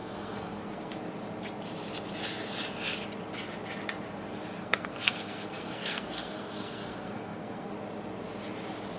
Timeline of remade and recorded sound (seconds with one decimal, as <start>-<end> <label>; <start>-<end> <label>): 0.0-0.9 remade; 0.9-4.6 recorded; 4.6-7.7 remade; 7.7-9.0 recorded